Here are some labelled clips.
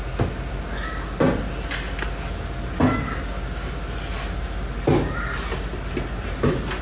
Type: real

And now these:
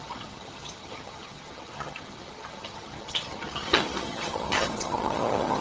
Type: fake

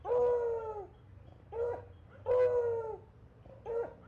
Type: real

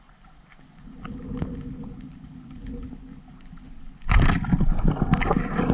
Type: real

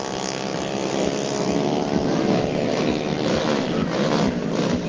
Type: real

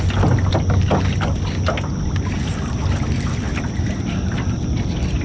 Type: real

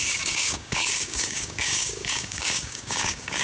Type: fake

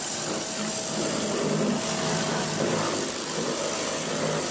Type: real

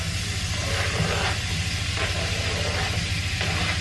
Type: real